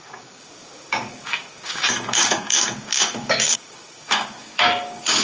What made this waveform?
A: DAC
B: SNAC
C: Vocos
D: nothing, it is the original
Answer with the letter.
A